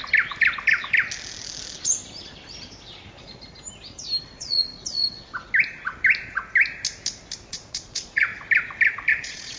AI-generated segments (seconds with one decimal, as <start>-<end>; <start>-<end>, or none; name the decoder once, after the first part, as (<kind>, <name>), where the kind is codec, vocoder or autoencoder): 4.2-5.3 (vocoder, Vocos); 7.5-8.3; 9.1-9.6